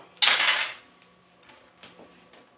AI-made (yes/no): no